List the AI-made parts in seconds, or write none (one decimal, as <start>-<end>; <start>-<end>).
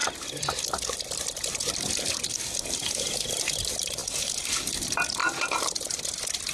4.0-4.7; 5.2-6.0